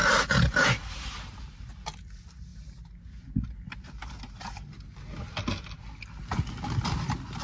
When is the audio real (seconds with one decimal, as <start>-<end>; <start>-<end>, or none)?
0.0-7.4